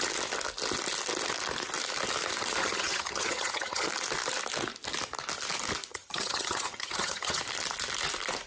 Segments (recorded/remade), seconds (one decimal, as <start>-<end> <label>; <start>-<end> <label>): 0.0-2.6 recorded; 2.6-3.9 remade; 3.9-5.9 recorded; 5.9-7.4 remade; 7.4-8.5 recorded